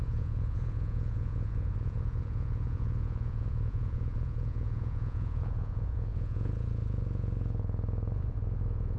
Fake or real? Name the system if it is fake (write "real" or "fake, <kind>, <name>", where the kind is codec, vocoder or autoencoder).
fake, vocoder, Vocos